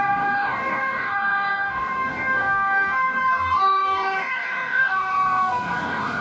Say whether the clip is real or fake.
fake